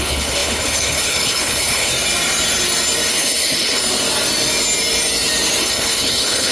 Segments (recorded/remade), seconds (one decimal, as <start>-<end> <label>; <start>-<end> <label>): 0.0-1.9 remade; 1.9-3.1 recorded; 3.1-3.8 remade; 3.8-5.6 recorded; 5.6-6.5 remade